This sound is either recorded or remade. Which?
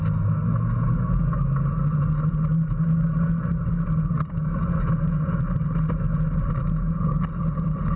recorded